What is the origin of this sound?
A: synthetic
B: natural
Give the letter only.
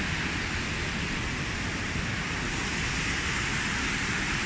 B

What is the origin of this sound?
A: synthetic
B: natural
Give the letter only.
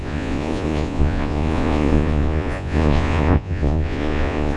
A